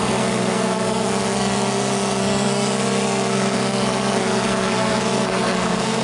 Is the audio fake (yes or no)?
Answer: yes